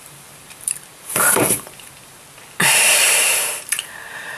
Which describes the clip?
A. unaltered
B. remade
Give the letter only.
B